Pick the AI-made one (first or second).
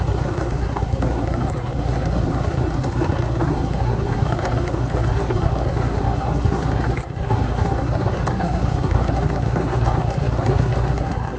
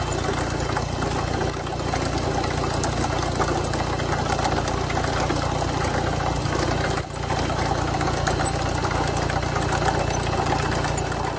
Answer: first